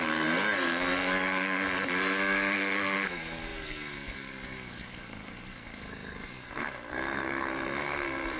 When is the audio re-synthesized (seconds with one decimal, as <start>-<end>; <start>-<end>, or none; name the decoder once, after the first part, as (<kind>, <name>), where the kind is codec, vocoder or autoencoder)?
0.0-8.4 (codec, SNAC)